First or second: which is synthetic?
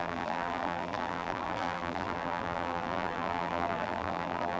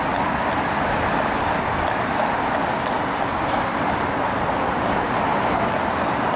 first